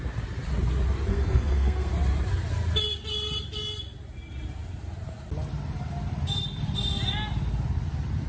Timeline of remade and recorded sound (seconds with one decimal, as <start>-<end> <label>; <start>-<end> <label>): 0.0-1.1 recorded; 1.1-1.9 remade; 1.9-8.3 recorded